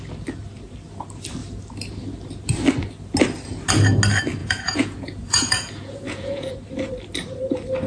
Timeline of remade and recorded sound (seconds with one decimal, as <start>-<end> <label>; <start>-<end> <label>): 0.0-4.4 recorded; 4.4-6.5 remade; 6.5-7.9 recorded